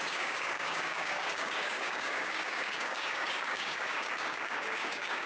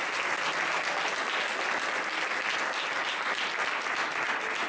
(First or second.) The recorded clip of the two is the second